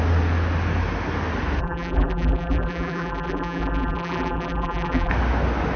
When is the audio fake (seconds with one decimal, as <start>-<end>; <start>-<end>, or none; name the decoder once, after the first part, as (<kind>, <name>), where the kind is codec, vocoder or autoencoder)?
1.6-5.1 (vocoder, BigVGAN v2)